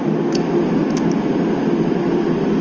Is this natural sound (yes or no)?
yes